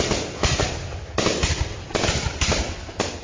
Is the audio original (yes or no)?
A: yes